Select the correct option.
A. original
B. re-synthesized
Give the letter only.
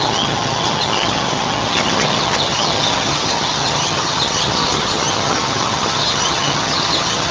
B